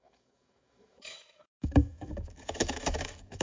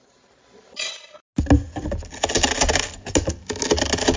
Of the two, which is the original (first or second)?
second